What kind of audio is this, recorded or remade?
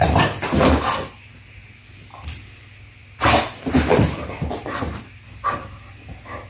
recorded